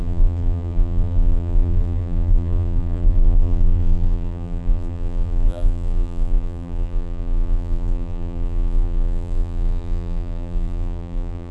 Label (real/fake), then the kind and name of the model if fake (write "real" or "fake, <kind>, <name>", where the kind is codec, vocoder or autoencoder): fake, vocoder, BigVGAN v2